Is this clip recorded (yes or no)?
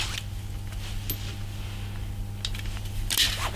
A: yes